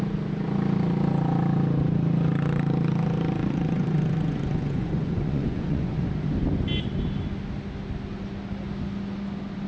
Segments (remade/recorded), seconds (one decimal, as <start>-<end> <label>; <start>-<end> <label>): 0.0-3.4 recorded; 3.4-6.1 remade; 6.1-9.7 recorded